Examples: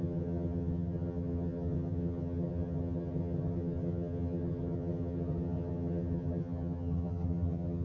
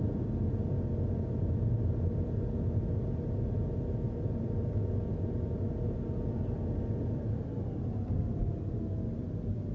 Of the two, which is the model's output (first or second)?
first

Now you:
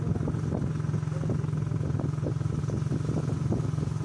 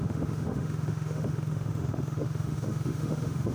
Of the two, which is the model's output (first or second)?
second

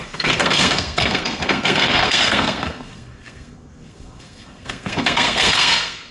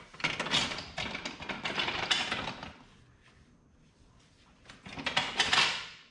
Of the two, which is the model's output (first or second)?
first